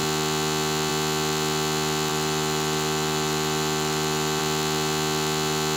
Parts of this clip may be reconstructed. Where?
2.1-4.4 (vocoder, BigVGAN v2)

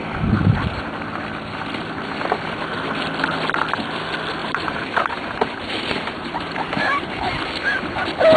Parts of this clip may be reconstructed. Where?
4.4-7.1 (vocoder, BigVGAN v2)

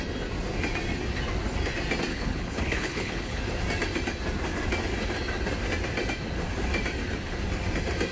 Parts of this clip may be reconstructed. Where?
2.1-3.4 (codec, HILCodec)

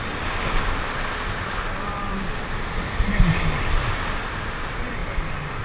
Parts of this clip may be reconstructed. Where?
none

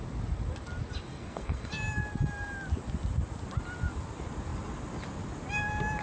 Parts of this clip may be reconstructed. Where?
1.1-1.7 (codec, SNAC)

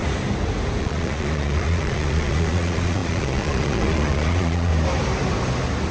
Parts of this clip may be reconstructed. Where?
0.8-4.7 (vocoder, Vocos)